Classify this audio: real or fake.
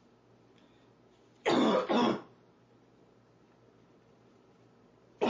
real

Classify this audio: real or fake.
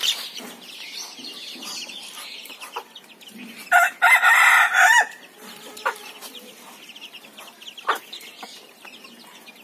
fake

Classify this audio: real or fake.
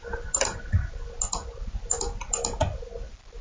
real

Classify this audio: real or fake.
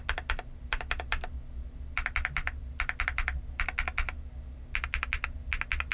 real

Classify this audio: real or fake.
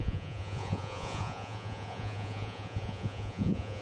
fake